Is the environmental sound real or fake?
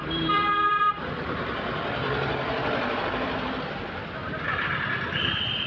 fake